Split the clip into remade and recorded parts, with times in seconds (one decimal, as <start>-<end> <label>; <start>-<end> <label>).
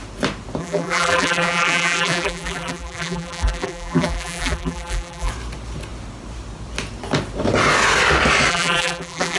0.0-0.6 recorded; 0.6-5.3 remade; 5.3-8.5 recorded; 8.5-9.4 remade